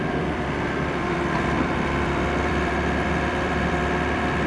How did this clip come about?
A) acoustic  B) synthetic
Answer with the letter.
B